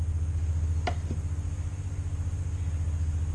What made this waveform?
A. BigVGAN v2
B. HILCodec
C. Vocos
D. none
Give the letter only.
D